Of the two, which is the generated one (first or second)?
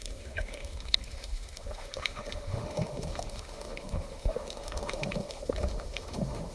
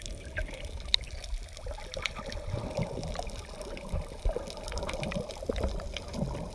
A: first